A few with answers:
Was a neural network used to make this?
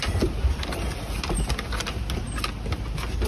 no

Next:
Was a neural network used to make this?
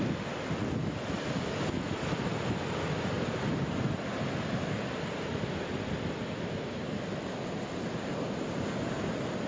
no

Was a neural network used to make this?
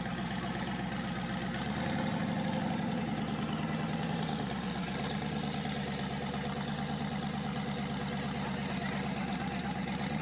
no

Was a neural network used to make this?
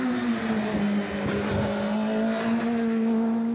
no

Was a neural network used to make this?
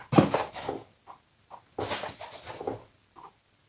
no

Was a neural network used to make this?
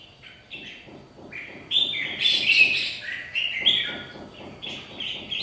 no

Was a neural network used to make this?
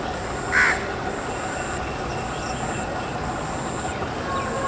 no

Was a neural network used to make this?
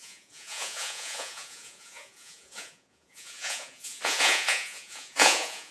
yes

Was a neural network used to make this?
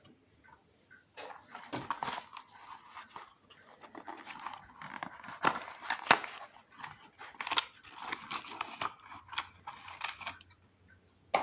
no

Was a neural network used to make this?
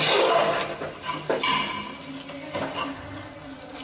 no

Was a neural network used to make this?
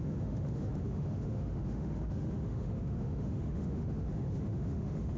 yes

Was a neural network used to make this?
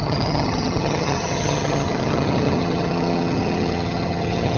yes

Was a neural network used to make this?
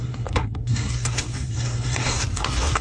yes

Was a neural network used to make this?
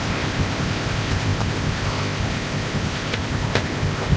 yes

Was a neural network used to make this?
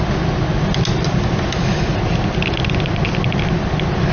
no